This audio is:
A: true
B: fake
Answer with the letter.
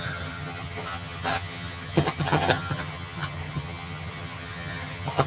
B